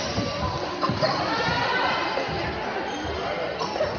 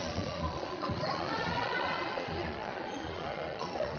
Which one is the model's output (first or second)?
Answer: second